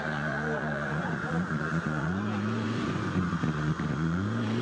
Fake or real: fake